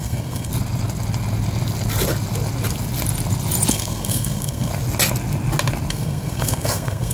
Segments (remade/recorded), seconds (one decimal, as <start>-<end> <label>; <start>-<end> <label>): 0.0-0.5 remade; 0.5-3.7 recorded; 3.7-4.7 remade; 4.7-5.9 recorded; 5.9-7.1 remade